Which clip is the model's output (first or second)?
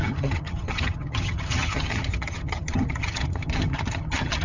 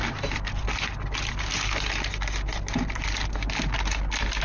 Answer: first